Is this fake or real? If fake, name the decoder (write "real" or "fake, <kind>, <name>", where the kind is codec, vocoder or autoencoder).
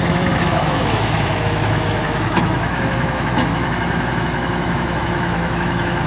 fake, autoencoder, DAC-VAE